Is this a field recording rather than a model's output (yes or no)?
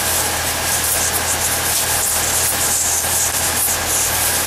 yes